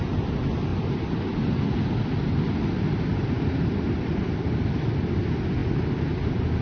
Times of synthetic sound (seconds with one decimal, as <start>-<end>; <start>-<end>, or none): none